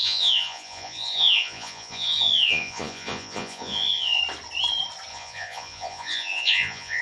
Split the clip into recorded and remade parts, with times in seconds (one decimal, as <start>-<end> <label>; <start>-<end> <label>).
0.0-4.2 remade; 4.2-5.1 recorded; 5.1-7.0 remade